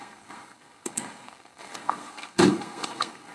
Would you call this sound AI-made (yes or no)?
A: yes